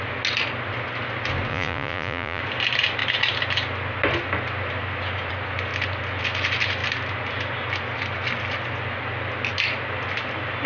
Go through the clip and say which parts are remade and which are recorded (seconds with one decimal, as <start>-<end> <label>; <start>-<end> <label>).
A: 0.0-1.5 recorded; 1.5-2.4 remade; 2.4-10.7 recorded